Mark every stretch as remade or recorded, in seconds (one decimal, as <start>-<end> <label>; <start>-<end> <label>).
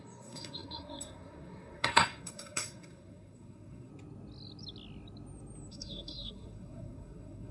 0.0-3.9 remade; 3.9-5.7 recorded; 5.7-7.5 remade